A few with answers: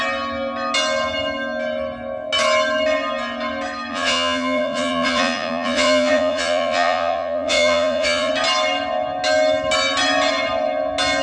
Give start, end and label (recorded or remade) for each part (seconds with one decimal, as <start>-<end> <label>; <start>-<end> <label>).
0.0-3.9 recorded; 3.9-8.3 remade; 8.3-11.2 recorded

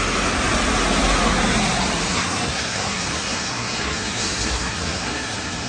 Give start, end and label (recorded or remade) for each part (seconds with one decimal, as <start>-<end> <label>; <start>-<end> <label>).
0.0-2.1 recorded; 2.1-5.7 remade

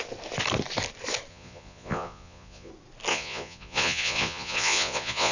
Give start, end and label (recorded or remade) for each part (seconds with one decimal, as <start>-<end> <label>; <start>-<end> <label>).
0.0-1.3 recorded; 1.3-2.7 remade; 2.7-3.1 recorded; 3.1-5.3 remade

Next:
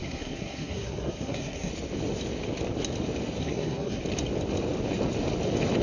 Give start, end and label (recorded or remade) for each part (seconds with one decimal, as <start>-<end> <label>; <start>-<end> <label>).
0.0-1.7 remade; 1.7-3.4 recorded; 3.4-4.0 remade; 4.0-5.8 recorded